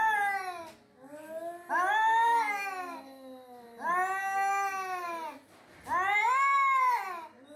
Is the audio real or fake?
real